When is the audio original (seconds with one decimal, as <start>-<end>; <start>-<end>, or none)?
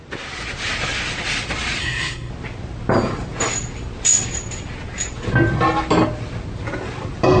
0.0-1.8; 2.3-7.4